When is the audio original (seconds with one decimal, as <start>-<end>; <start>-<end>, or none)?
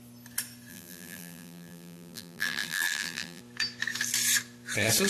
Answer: 0.0-0.7; 3.4-5.1